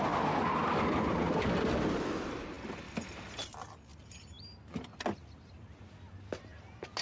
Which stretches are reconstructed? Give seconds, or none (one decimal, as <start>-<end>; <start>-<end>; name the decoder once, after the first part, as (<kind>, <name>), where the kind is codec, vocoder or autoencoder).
none